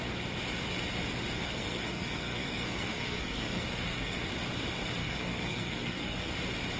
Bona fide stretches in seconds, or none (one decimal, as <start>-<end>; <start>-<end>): 0.0-1.4; 4.3-5.0; 6.3-6.8